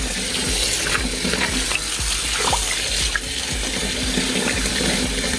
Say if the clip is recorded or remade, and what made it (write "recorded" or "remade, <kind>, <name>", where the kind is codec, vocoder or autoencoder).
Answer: recorded